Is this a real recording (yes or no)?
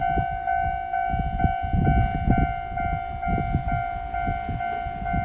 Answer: yes